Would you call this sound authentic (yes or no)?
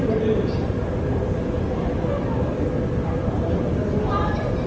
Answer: yes